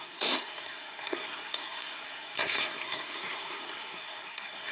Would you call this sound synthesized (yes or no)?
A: yes